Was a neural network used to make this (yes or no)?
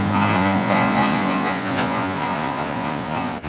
yes